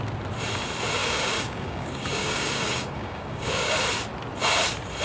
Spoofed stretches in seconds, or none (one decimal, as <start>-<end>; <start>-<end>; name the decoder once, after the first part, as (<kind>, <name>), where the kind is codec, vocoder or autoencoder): 1.0-3.7 (codec, DAC)